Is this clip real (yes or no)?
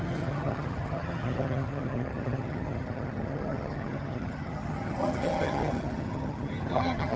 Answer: no